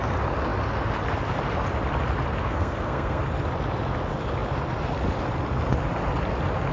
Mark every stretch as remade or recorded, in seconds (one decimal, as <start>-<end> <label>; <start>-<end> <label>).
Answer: 0.0-2.4 recorded; 2.4-3.2 remade; 3.2-6.7 recorded